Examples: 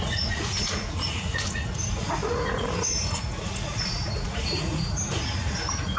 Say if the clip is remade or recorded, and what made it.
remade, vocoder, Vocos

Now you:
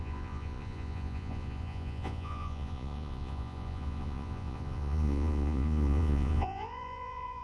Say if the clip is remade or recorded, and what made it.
remade, vocoder, Vocos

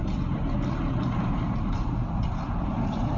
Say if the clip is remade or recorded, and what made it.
recorded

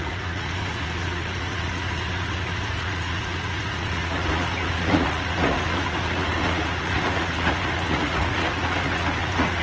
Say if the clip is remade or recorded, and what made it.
remade, vocoder, Vocos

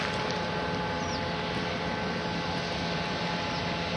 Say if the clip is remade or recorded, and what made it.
recorded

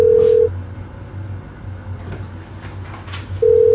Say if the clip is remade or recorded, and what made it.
recorded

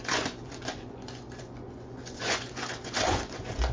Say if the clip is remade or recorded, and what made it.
remade, vocoder, Vocos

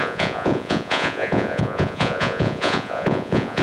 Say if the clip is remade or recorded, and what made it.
remade, vocoder, Vocos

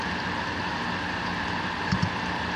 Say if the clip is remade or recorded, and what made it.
recorded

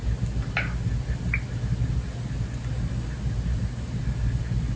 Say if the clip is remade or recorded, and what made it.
recorded